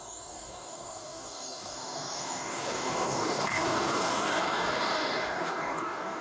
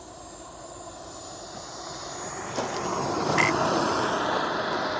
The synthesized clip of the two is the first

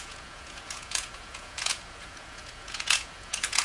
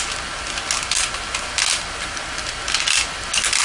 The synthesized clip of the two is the first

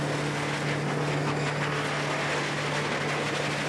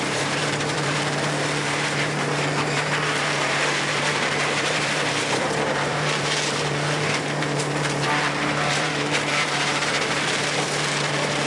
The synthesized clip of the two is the second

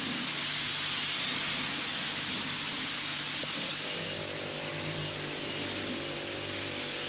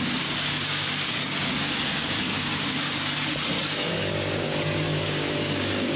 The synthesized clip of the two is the second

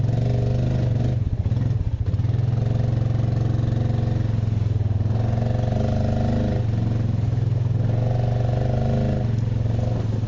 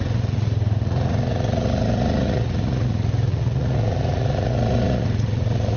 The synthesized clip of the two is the second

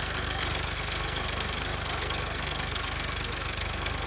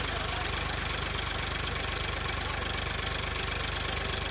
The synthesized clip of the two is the first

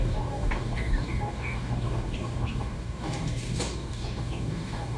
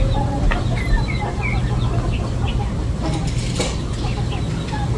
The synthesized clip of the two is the first